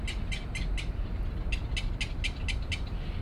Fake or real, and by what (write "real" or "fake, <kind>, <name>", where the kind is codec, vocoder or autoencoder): real